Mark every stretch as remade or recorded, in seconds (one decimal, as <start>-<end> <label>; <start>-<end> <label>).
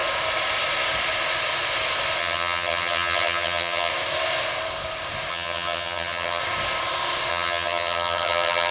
0.0-2.2 recorded; 2.2-3.9 remade; 3.9-5.3 recorded; 5.3-6.4 remade; 6.4-7.3 recorded; 7.3-8.7 remade